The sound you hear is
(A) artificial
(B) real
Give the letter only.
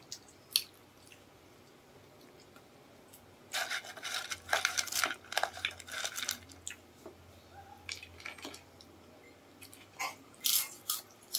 B